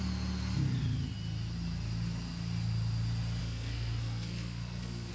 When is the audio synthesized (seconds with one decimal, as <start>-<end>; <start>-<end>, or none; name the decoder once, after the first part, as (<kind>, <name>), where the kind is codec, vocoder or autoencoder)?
3.4-5.1 (codec, SNAC)

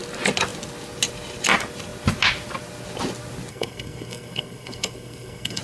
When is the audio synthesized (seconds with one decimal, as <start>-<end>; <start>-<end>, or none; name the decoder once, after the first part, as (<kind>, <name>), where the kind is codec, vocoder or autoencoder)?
3.5-5.6 (codec, SNAC)

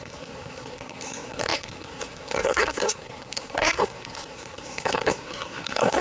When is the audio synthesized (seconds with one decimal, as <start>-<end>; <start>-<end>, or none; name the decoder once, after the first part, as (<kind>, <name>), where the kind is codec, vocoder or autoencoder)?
0.0-6.0 (codec, SNAC)